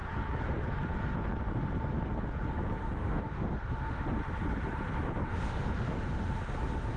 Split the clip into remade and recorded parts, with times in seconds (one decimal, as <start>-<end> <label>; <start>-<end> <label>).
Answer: 0.0-2.8 recorded; 2.8-4.0 remade; 4.0-5.3 recorded; 5.3-6.3 remade; 6.3-7.0 recorded